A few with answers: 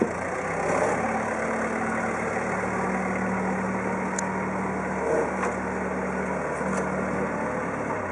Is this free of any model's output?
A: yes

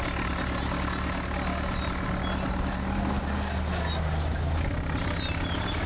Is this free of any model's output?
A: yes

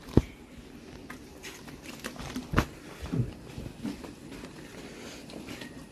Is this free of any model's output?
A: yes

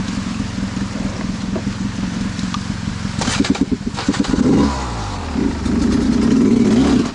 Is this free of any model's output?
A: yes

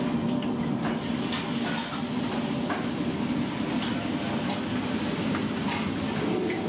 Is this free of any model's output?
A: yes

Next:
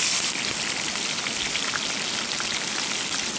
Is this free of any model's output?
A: yes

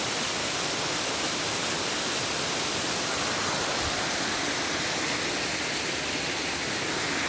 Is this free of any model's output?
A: yes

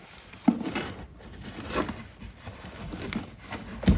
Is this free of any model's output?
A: yes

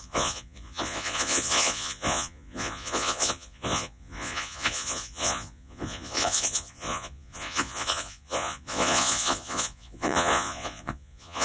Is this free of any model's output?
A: no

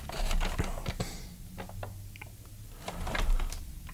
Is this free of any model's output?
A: yes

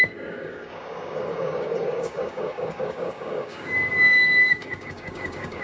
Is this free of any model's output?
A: no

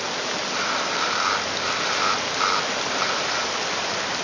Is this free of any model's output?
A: no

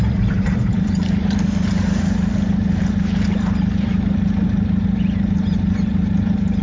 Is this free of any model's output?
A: no